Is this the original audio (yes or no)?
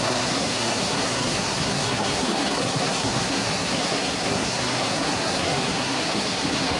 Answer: no